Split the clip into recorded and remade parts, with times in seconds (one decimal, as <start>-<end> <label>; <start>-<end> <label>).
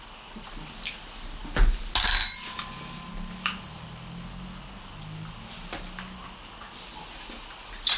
0.0-8.0 recorded